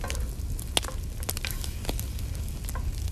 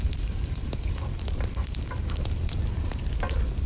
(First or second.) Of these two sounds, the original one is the first